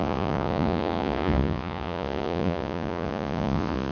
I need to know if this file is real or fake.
fake